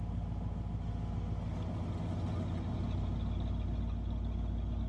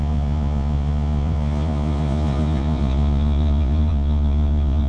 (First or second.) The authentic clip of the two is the first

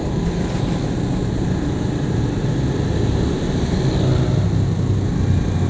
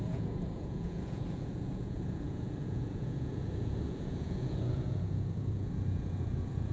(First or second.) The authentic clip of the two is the first